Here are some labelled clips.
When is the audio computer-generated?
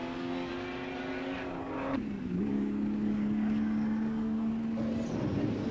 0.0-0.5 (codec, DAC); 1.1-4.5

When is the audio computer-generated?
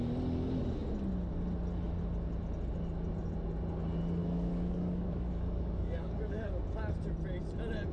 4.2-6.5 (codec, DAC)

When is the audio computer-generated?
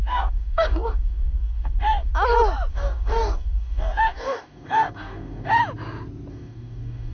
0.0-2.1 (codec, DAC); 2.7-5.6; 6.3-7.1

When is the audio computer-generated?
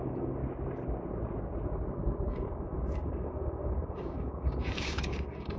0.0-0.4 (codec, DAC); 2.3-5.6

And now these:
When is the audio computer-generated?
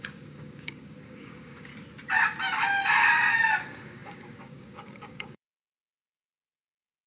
0.0-1.7 (codec, DAC); 3.3-7.1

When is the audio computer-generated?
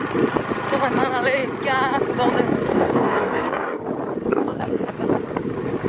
2.7-3.8 (codec, DAC); 4.3-4.9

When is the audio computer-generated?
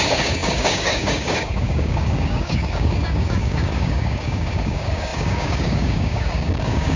0.0-7.0 (codec, DAC)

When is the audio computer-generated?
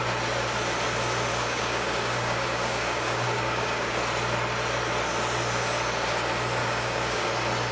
1.3-4.0 (codec, DAC); 6.6-7.3